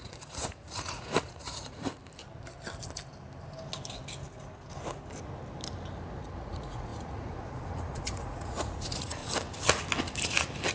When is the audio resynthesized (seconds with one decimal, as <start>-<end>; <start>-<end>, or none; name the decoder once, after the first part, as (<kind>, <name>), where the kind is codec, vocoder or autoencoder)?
0.0-2.0 (vocoder, Vocos); 6.4-9.2